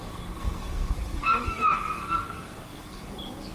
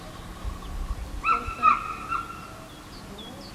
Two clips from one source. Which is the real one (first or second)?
second